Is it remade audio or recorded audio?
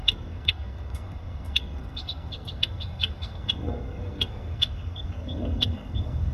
remade